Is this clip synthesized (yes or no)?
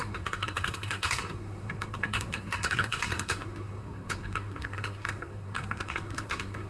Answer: yes